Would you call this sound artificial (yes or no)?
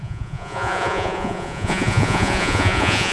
yes